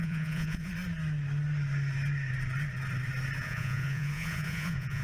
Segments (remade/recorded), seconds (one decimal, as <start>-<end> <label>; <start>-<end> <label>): 0.0-0.7 remade; 0.7-3.4 recorded; 3.4-5.0 remade